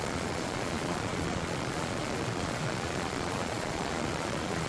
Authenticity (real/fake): fake